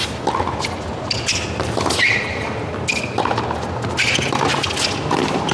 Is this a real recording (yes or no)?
yes